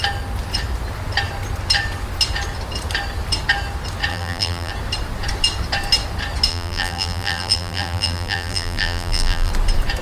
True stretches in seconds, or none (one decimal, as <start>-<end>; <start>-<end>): 0.0-4.1; 4.7-6.5; 9.5-10.0